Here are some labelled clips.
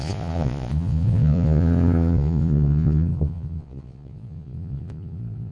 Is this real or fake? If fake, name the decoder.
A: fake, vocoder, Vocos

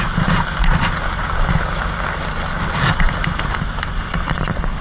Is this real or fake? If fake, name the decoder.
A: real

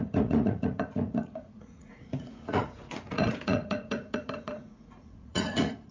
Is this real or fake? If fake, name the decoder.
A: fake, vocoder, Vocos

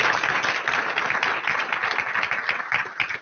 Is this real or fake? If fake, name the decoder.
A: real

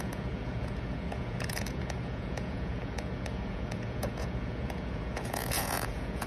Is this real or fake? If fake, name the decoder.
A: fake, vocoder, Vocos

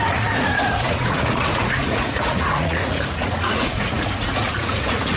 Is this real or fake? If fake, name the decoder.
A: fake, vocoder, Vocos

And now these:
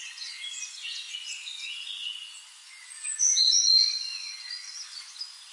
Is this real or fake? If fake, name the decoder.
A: fake, vocoder, Vocos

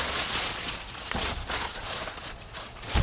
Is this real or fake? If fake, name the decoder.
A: fake, vocoder, Vocos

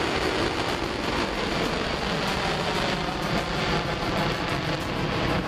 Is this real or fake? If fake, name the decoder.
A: real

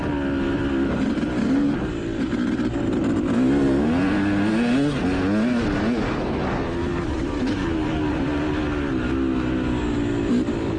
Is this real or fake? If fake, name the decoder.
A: real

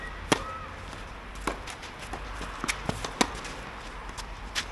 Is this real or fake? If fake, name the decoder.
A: real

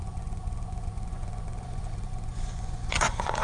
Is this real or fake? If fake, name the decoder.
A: fake, vocoder, Vocos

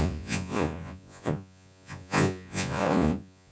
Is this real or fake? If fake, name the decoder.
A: fake, vocoder, Vocos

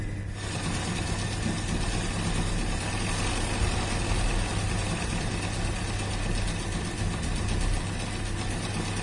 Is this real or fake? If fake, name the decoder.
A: real